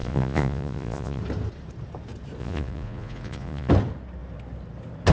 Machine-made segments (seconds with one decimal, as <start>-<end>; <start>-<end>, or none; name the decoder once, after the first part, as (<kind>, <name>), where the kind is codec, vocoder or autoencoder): 0.0-1.2 (vocoder, Vocos); 2.4-3.7

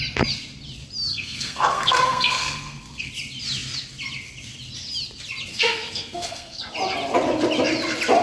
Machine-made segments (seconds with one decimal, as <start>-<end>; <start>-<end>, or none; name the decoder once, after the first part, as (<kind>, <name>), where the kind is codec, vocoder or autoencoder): 1.1-3.1 (codec, SNAC); 5.5-6.6

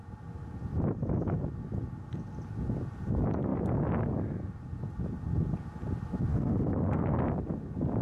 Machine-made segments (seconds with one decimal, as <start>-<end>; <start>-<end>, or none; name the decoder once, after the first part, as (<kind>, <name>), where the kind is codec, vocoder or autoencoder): 6.3-7.2 (codec, SNAC)

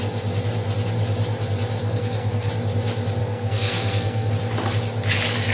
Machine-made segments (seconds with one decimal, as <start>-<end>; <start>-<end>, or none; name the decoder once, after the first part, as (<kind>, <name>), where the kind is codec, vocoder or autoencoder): 1.8-2.5 (codec, SNAC); 3.2-4.3

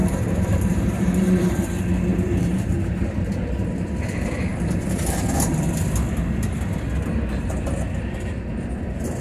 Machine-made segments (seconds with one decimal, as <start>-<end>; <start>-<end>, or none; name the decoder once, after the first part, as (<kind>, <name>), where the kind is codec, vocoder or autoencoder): 0.0-1.6 (vocoder, BigVGAN v2); 2.1-3.1; 4.5-5.7

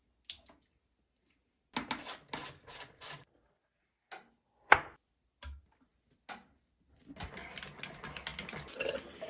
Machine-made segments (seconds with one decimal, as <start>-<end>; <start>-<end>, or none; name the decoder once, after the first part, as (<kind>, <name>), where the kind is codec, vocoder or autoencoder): none

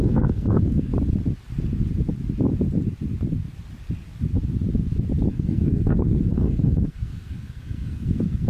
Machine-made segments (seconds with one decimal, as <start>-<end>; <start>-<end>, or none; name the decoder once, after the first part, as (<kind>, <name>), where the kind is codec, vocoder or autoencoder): 0.0-0.9 (codec, SNAC); 5.3-8.5